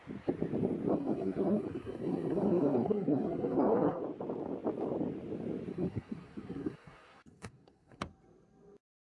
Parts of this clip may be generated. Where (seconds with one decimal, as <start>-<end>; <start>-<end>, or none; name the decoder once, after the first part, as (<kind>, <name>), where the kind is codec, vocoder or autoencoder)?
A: 0.9-4.0 (codec, SNAC); 5.7-8.0

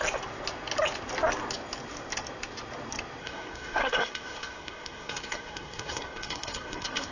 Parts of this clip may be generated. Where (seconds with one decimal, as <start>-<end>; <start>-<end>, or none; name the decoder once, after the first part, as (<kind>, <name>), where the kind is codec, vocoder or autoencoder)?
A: 3.2-7.1 (codec, SNAC)

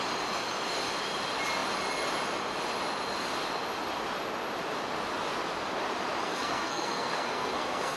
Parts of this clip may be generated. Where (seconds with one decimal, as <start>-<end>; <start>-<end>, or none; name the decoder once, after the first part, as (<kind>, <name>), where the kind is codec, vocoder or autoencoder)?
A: 6.2-8.0 (codec, SNAC)

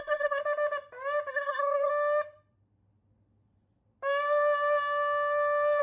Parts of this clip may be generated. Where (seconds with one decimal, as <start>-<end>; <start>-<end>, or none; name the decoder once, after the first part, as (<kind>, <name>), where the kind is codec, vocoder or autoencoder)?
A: 0.0-0.4 (codec, SNAC); 1.3-1.9

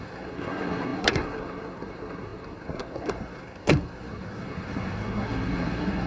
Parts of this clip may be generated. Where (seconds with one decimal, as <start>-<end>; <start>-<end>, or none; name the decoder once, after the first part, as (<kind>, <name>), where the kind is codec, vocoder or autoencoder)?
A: 0.0-6.1 (codec, SNAC)

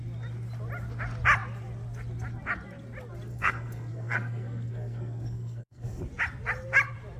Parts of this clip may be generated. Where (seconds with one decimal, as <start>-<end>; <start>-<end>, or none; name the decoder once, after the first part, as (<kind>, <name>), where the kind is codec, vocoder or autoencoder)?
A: 3.3-6.0 (codec, SNAC)

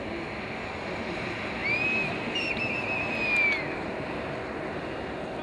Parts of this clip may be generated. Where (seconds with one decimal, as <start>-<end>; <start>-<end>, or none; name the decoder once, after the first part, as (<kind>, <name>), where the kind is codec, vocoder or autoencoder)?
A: none